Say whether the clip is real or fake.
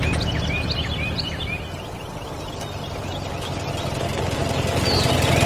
real